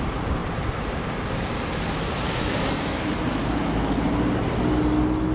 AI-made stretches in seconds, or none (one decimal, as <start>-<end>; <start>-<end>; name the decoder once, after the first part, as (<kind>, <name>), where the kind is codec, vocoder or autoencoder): 0.4-3.6 (vocoder, BigVGAN v2)